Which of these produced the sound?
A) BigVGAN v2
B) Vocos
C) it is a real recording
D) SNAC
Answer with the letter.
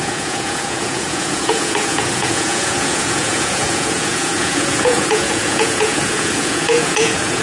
B